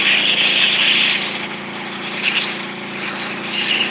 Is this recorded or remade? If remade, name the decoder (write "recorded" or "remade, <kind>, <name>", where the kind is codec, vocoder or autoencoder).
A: recorded